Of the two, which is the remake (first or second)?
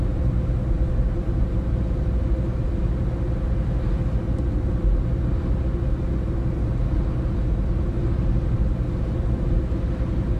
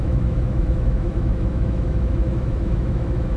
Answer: second